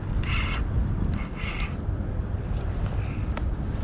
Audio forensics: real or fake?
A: real